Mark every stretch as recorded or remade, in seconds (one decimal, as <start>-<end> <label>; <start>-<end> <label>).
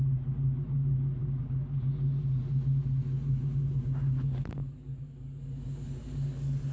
0.0-6.7 recorded